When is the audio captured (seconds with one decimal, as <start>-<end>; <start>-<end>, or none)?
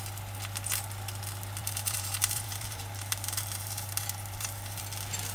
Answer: 0.0-1.6; 4.8-5.3